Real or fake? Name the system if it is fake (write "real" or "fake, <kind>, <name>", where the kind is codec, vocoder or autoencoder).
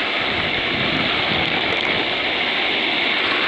real